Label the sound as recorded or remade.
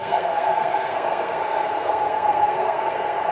remade